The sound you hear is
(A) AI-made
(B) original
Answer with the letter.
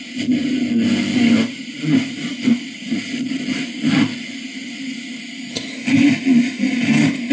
B